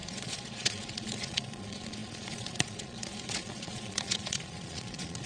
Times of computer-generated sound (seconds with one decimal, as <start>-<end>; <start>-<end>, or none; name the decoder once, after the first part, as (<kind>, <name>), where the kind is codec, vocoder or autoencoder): 0.0-5.3 (vocoder, Vocos)